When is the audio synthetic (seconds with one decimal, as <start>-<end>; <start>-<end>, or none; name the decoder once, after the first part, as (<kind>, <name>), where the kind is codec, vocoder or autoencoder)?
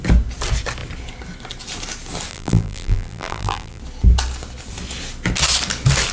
2.3-3.8 (vocoder, BigVGAN v2)